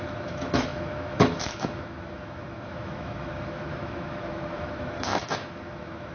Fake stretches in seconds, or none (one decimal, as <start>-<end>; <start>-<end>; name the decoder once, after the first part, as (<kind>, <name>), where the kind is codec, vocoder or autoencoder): 0.0-6.1 (autoencoder, DAC-VAE)